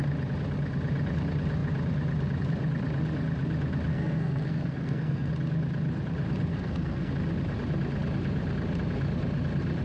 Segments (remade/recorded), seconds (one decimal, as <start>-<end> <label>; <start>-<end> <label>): 0.0-3.9 recorded; 3.9-5.3 remade; 5.3-6.5 recorded; 6.5-7.1 remade; 7.1-9.8 recorded